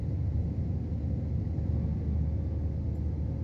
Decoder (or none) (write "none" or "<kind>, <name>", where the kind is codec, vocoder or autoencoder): none